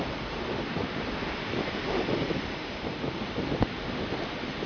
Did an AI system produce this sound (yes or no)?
no